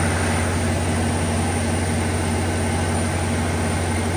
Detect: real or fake real